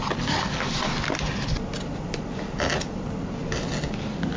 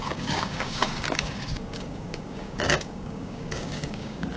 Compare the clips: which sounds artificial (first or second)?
second